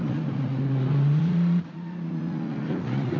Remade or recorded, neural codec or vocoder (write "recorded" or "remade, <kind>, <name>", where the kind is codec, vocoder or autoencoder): remade, vocoder, Vocos